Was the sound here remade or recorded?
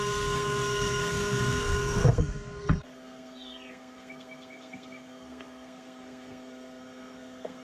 remade